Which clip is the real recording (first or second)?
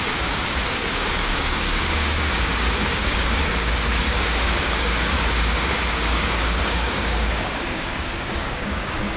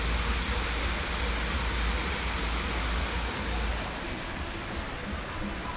second